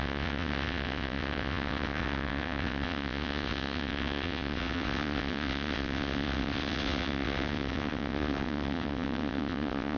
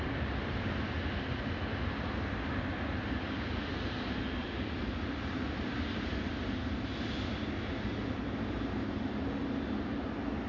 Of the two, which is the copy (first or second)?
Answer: first